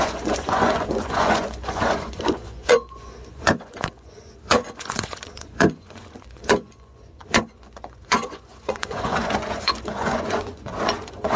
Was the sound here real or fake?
fake